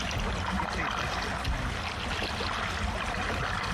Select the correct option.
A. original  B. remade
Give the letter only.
A